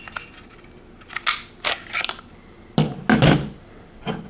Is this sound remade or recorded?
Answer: recorded